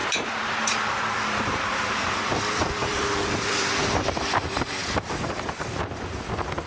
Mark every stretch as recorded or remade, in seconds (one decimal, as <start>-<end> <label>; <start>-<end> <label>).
0.0-1.9 remade; 1.9-2.8 recorded; 2.8-4.2 remade; 4.2-4.8 recorded; 4.8-5.3 remade; 5.3-6.7 recorded